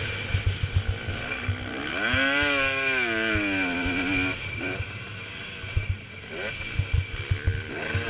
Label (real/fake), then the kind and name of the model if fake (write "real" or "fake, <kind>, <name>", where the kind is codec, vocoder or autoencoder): real